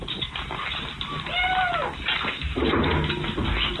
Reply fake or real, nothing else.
real